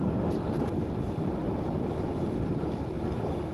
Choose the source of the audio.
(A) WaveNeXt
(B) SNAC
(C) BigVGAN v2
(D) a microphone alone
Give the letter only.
D